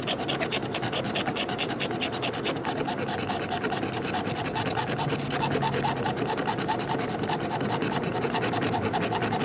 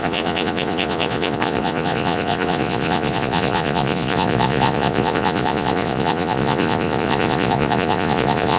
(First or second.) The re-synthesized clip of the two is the second